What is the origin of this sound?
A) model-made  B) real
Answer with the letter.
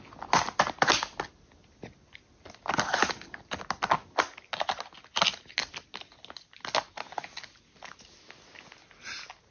B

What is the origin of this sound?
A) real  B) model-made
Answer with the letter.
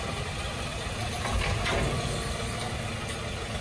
A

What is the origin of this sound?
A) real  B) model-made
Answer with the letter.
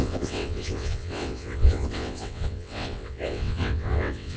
B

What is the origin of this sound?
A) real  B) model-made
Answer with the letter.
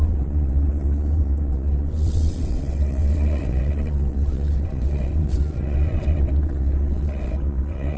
B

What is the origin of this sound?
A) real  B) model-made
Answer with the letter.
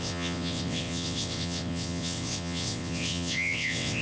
B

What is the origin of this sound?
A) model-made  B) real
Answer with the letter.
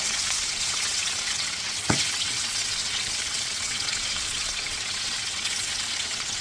A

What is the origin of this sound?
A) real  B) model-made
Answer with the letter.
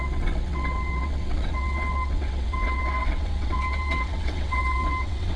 B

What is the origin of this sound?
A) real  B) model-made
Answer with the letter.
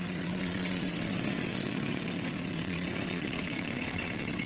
B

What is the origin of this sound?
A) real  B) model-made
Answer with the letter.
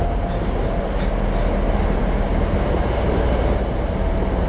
A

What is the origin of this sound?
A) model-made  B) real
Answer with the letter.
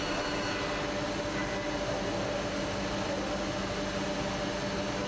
B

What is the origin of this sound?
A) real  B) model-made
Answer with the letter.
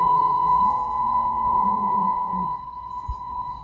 B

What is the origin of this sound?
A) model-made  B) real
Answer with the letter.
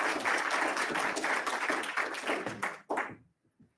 B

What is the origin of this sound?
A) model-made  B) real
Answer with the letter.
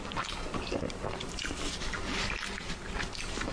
B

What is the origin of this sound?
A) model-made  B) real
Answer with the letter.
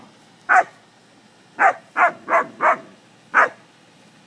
B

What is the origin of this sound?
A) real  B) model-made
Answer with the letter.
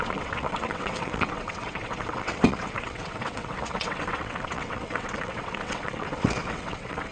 B